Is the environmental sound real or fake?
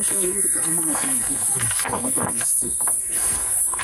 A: fake